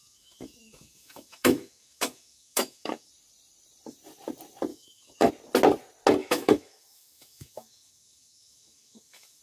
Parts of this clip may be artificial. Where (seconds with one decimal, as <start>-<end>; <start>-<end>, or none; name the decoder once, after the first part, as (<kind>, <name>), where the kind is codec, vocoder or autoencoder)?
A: 0.0-3.1 (autoencoder, DAC-VAE); 4.7-5.3; 6.2-9.4